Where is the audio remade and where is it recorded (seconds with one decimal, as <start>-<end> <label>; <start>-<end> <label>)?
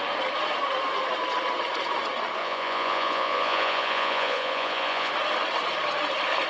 0.0-2.4 recorded; 2.4-5.1 remade; 5.1-6.5 recorded